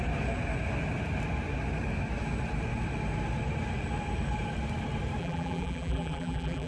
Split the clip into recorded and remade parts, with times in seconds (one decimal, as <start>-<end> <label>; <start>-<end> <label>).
0.0-5.2 recorded; 5.2-6.7 remade